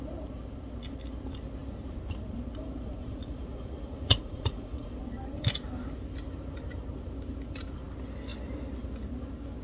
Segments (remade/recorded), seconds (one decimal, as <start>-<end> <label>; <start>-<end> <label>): 0.0-3.0 recorded; 3.0-5.0 remade; 5.0-9.6 recorded